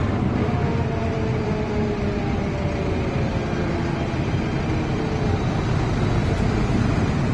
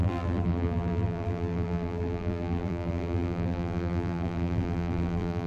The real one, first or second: first